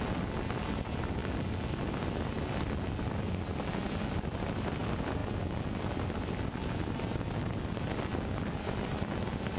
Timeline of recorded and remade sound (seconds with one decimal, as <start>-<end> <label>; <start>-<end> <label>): 0.0-9.6 recorded